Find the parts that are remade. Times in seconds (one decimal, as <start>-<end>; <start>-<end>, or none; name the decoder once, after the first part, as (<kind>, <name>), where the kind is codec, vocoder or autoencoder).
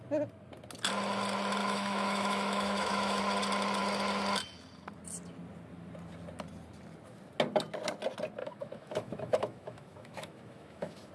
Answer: 1.6-3.2 (autoencoder, DAC-VAE); 8.4-11.1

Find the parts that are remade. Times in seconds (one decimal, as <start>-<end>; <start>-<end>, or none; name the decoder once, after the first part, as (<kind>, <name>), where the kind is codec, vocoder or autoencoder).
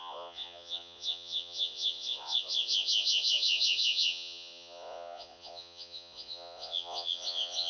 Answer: 0.0-7.7 (vocoder, Vocos)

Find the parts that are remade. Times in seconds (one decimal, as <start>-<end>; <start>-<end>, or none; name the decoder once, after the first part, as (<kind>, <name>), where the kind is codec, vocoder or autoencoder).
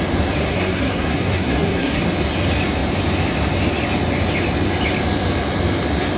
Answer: 0.4-2.0 (codec, SNAC)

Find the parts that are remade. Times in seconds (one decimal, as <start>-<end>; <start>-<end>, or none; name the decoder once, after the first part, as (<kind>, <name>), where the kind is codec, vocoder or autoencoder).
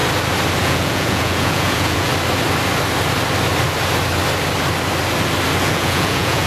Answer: 0.6-2.1 (vocoder, Vocos); 5.6-6.5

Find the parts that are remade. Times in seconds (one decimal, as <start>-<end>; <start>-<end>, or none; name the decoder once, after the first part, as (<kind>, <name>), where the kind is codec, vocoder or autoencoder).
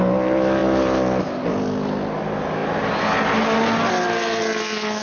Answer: none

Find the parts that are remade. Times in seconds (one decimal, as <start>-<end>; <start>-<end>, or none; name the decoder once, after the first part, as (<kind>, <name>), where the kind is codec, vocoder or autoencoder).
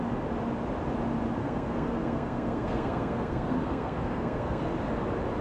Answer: 1.4-4.6 (codec, SNAC)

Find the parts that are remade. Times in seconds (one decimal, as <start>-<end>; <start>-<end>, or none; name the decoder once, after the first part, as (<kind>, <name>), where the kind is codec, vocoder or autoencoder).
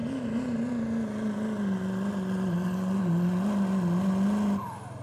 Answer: none